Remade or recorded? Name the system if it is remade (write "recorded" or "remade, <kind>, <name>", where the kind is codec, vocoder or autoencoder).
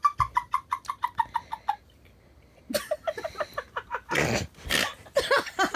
recorded